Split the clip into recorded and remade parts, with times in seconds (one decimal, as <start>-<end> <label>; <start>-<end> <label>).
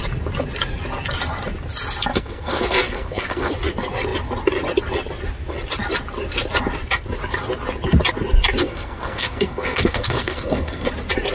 0.0-2.1 recorded; 2.1-3.5 remade; 3.5-8.6 recorded; 8.6-10.9 remade; 10.9-11.3 recorded